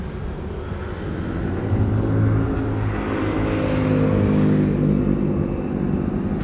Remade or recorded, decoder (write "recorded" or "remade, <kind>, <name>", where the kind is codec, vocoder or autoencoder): recorded